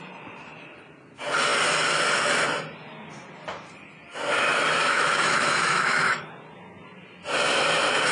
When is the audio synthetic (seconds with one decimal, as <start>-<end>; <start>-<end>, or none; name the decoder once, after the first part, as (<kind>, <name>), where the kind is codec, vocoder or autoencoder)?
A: 4.8-6.3 (autoencoder, DAC-VAE)